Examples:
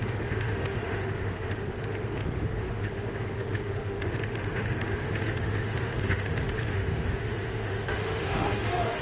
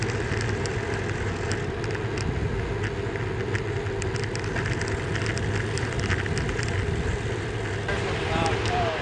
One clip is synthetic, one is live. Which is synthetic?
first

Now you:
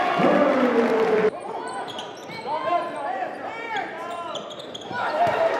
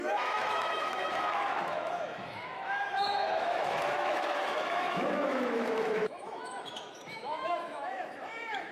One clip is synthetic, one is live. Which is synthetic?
second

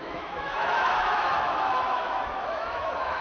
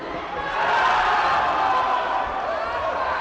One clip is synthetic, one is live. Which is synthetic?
first